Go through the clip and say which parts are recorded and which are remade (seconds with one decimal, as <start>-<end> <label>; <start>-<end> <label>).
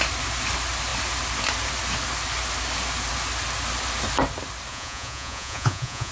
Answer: 0.0-4.7 recorded; 4.7-6.1 remade